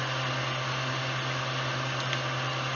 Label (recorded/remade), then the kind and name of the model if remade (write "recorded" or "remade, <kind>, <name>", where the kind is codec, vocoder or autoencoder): recorded